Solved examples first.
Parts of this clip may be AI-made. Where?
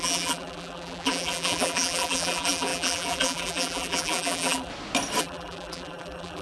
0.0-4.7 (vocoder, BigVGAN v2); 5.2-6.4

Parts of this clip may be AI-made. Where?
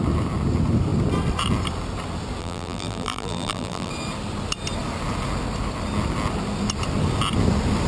2.4-3.9 (vocoder, BigVGAN v2)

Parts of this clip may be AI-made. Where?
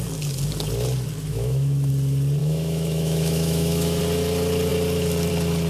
1.3-1.9 (autoencoder, DAC-VAE); 2.4-4.0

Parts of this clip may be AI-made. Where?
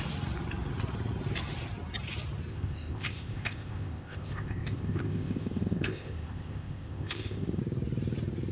2.5-7.6 (codec, ZipCodec)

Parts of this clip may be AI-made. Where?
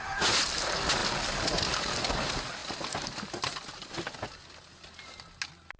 2.6-4.1 (vocoder, BigVGAN v2)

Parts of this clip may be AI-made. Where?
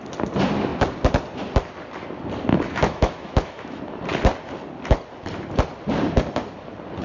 2.5-3.8 (autoencoder, DAC-VAE)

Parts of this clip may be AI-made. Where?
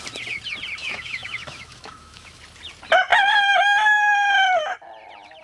0.8-2.4 (autoencoder, DAC-VAE)